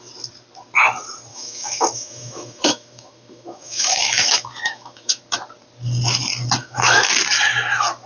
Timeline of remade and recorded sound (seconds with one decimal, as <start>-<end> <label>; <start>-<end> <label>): 0.0-1.3 recorded; 1.3-5.2 remade; 5.2-6.6 recorded; 6.6-7.1 remade; 7.1-8.1 recorded